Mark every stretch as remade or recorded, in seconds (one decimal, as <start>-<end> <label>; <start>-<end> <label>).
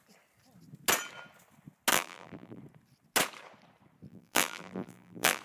0.0-1.9 recorded; 1.9-2.6 remade; 2.6-4.1 recorded; 4.1-5.4 remade